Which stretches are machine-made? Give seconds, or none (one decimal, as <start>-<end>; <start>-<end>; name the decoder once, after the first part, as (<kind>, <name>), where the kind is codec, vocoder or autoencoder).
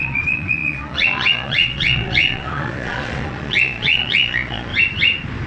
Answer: 0.0-4.7 (vocoder, Vocos)